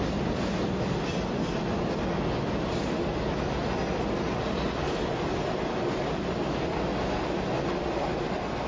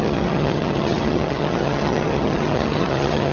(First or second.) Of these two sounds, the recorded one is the first